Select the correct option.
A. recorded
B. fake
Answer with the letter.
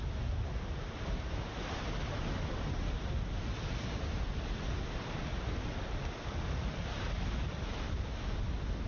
A